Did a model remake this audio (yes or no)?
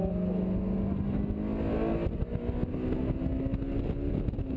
no